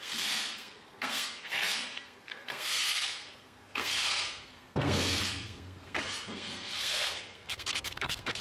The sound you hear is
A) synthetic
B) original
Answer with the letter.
A